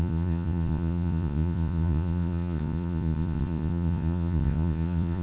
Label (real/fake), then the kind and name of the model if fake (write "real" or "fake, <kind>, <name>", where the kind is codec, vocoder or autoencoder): fake, vocoder, Vocos